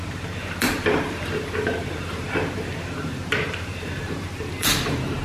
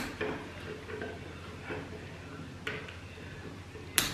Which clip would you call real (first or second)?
second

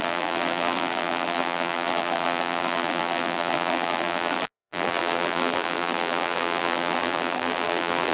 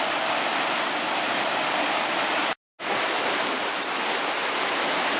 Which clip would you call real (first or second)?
second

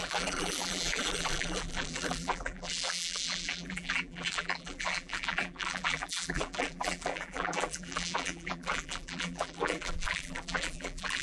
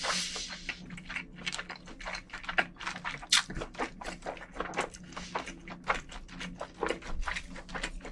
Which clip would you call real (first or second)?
second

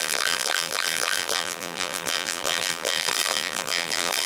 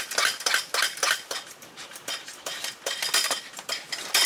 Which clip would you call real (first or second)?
second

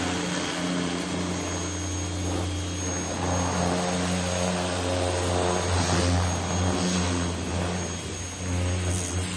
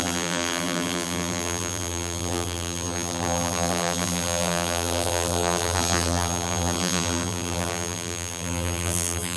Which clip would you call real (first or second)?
first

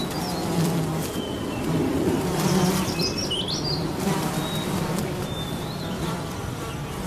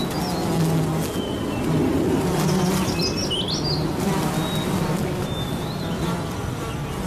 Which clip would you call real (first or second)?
second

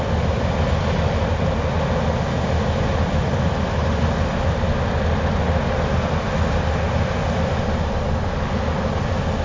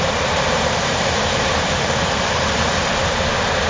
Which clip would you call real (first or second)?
first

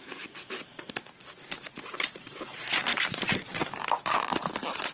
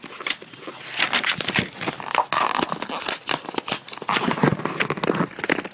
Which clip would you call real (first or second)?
second